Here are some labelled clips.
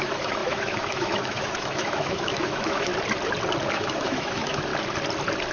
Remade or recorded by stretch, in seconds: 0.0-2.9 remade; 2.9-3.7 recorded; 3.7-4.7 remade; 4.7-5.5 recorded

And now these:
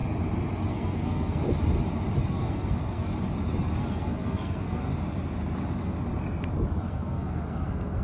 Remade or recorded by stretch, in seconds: 0.0-0.7 recorded; 0.7-1.4 remade; 1.4-2.3 recorded; 2.3-3.1 remade; 3.1-3.8 recorded; 3.8-4.9 remade; 4.9-6.8 recorded; 6.8-8.0 remade

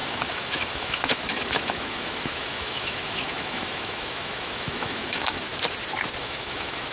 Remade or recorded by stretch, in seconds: 0.0-5.5 remade; 5.5-6.2 recorded; 6.2-6.9 remade

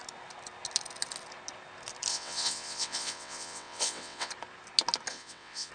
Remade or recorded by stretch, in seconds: 0.0-2.1 recorded; 2.1-4.3 remade; 4.3-5.1 recorded; 5.1-5.7 remade

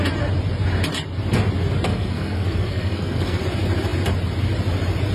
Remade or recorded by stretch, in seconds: 0.0-1.9 recorded; 1.9-3.4 remade; 3.4-5.1 recorded

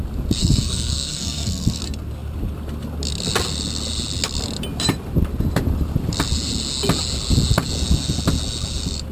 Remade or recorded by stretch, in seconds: 0.0-0.4 recorded; 0.4-1.8 remade; 1.8-9.1 recorded

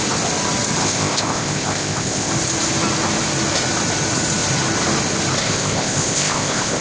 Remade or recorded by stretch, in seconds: 0.0-0.8 recorded; 0.8-2.3 remade; 2.3-5.4 recorded; 5.4-6.8 remade